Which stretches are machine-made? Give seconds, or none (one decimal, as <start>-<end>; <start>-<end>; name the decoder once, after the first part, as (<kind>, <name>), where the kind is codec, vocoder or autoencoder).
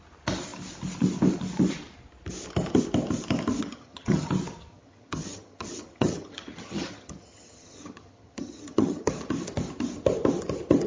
3.6-4.3 (vocoder, HiFi-GAN); 4.7-9.1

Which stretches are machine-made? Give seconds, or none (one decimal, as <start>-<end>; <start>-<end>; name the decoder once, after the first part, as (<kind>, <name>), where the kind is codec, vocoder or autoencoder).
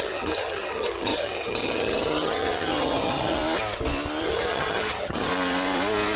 0.0-3.4 (vocoder, HiFi-GAN); 4.2-5.3